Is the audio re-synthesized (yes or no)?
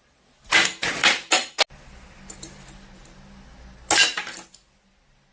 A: no